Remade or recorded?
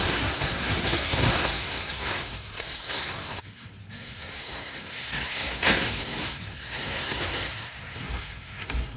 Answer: remade